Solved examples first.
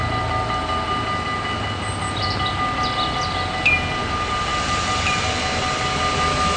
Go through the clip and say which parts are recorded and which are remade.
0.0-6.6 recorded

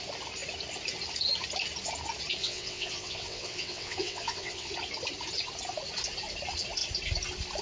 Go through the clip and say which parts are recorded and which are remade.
0.0-2.4 recorded; 2.4-4.7 remade; 4.7-7.6 recorded